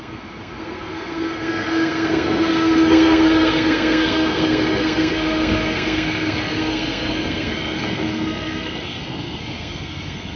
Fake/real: fake